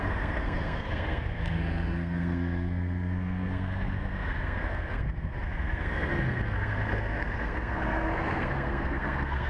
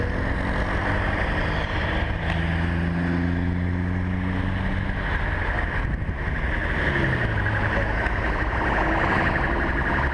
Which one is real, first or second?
second